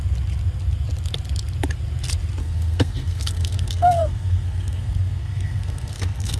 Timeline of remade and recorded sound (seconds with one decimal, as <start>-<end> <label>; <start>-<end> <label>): 0.0-2.4 recorded; 2.4-6.4 remade

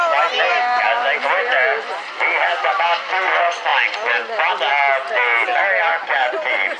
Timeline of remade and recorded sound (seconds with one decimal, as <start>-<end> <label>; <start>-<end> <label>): 0.0-6.8 recorded

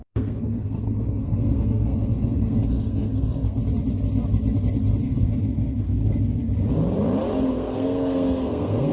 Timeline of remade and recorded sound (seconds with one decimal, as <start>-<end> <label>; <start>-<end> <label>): 0.0-3.6 remade; 3.6-5.0 recorded; 5.0-6.0 remade; 6.0-7.5 recorded; 7.5-8.9 remade

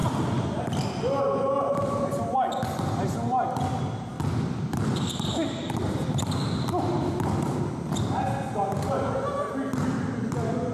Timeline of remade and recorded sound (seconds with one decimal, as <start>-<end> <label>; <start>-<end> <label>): 0.0-10.7 recorded

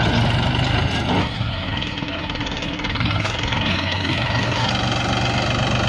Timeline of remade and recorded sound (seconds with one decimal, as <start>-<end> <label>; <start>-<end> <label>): 0.0-1.2 recorded; 1.2-4.7 remade; 4.7-5.9 recorded

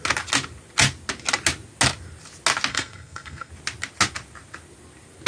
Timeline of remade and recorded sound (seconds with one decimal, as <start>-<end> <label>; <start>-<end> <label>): 0.0-2.7 recorded; 2.7-3.5 remade; 3.5-5.3 recorded

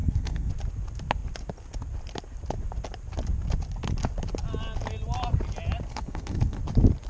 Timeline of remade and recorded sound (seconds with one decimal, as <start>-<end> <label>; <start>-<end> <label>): 0.0-0.5 remade; 0.5-5.9 recorded; 5.9-6.6 remade; 6.6-7.1 recorded

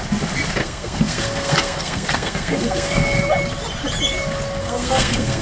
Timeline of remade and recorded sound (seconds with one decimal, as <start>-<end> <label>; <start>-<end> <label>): 0.0-0.6 recorded; 0.6-3.3 remade; 3.3-4.6 recorded; 4.6-5.4 remade